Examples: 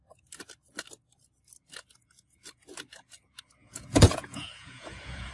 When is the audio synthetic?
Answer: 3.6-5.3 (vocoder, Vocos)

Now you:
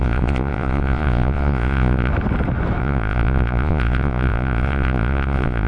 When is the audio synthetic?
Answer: 0.0-2.1 (vocoder, Vocos); 2.8-5.7

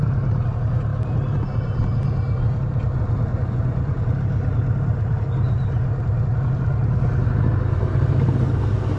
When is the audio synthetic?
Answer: 3.3-4.0 (vocoder, Vocos)

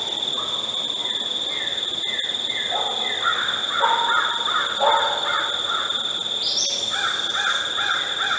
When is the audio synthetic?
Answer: none

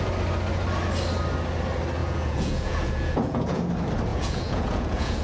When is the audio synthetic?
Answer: 2.0-3.6 (vocoder, Vocos); 4.1-5.2

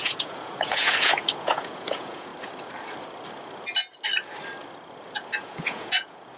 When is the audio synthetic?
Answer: 0.0-2.3 (vocoder, Vocos); 5.4-6.4

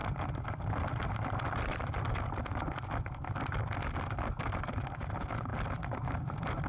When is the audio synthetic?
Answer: none